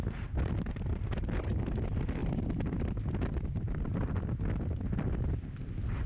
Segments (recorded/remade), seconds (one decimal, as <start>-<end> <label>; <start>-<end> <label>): 0.0-2.2 recorded; 2.2-2.8 remade; 2.8-6.1 recorded